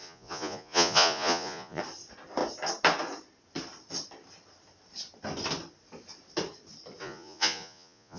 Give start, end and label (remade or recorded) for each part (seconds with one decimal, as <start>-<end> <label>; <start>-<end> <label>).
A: 0.0-1.8 remade; 1.8-7.0 recorded; 7.0-8.2 remade